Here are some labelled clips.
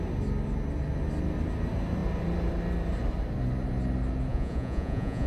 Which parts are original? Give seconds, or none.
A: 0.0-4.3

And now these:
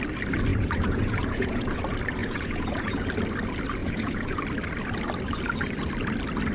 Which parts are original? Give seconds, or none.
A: 0.0-0.5; 1.8-2.2; 3.0-3.8; 4.4-6.5

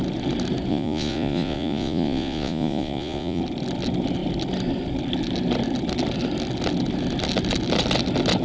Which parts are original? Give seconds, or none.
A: 0.0-0.7; 3.4-8.4

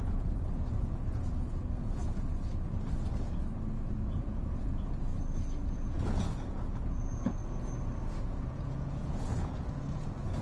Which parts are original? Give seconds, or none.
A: 2.0-3.9; 5.1-5.7; 7.4-8.2

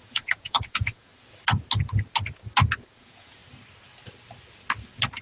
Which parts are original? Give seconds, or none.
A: 1.1-2.8; 3.4-5.2